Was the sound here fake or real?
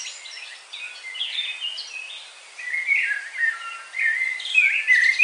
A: real